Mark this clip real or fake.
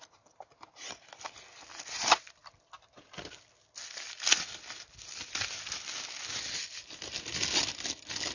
real